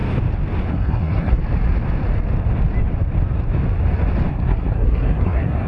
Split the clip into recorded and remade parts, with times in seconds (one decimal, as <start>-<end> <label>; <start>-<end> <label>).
0.0-0.7 recorded; 0.7-1.4 remade; 1.4-4.3 recorded; 4.3-5.7 remade